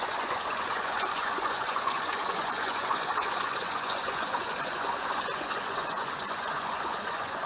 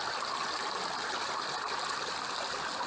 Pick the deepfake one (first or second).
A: first